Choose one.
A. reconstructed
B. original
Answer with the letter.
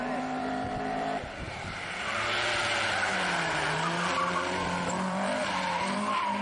A